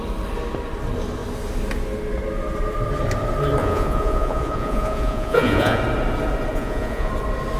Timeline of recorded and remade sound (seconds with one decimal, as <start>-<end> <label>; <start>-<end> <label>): 0.0-3.6 recorded; 3.6-5.8 remade; 5.8-6.5 recorded; 6.5-7.1 remade; 7.1-7.6 recorded